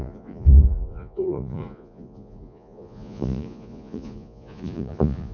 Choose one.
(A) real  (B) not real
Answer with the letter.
B